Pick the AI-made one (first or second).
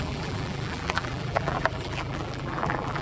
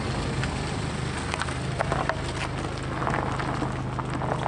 first